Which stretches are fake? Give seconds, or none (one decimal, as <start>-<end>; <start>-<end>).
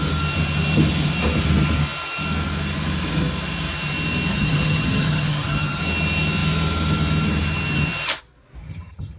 4.3-5.8; 8.6-9.2